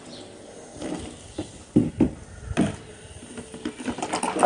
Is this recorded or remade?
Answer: recorded